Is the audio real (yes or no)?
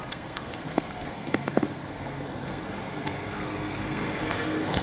no